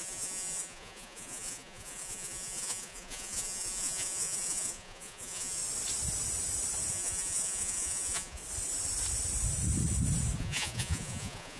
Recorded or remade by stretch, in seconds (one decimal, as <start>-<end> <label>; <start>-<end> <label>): 0.0-5.6 remade; 5.6-6.9 recorded; 6.9-8.4 remade; 8.4-10.4 recorded; 10.4-11.6 remade